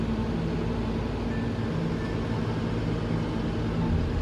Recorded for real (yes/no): yes